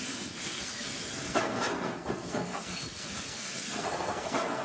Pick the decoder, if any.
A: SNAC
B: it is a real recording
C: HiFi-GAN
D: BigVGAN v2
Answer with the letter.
A